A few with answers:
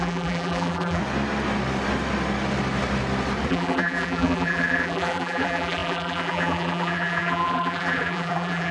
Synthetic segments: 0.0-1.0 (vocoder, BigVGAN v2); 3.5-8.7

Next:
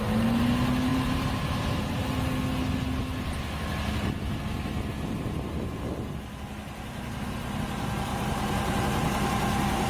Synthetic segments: 0.9-2.0 (vocoder, BigVGAN v2); 8.1-9.9

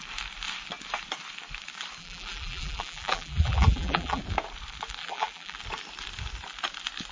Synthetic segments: 2.0-4.2 (vocoder, BigVGAN v2); 5.0-5.6

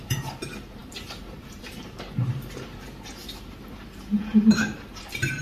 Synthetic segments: 0.0-5.4 (vocoder, BigVGAN v2)

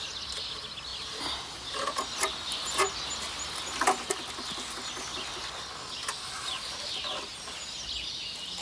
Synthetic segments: none

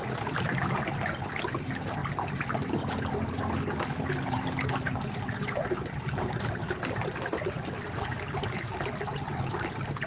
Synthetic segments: 0.0-10.1 (vocoder, BigVGAN v2)

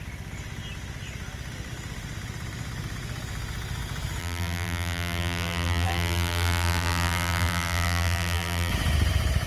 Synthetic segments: 4.2-8.7 (vocoder, BigVGAN v2)